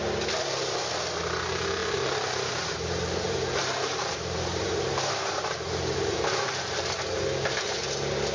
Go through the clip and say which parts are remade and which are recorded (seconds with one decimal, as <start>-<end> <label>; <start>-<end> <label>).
0.0-1.8 recorded; 1.8-6.5 remade; 6.5-8.3 recorded